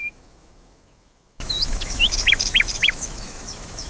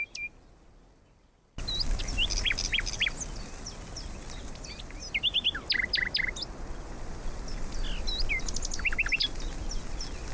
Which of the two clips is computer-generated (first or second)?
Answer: first